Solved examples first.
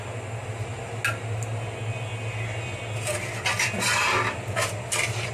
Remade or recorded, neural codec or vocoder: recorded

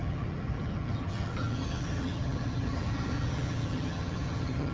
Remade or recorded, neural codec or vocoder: remade, vocoder, HiFi-GAN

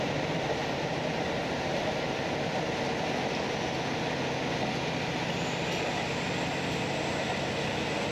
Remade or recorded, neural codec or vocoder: recorded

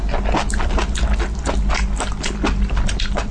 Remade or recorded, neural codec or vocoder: recorded